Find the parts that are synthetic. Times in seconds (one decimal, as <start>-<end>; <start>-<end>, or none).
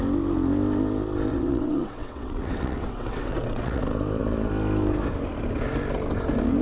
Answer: 1.3-3.8